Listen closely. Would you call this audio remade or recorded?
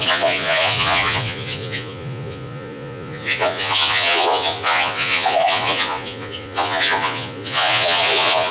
remade